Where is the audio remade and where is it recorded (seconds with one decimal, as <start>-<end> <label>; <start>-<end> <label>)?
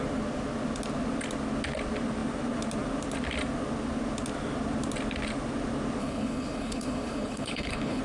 0.0-6.0 recorded; 6.0-8.0 remade